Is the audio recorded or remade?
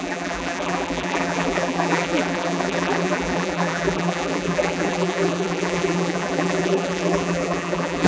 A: remade